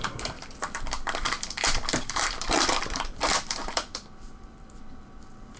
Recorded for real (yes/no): no